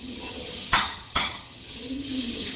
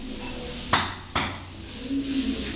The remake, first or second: first